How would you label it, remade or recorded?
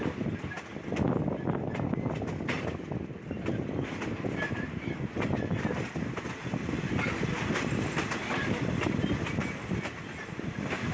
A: recorded